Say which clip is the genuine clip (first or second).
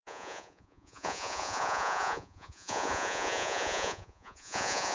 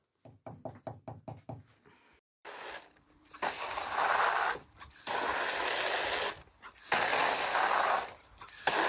second